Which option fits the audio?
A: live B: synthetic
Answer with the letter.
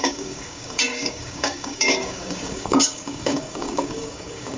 B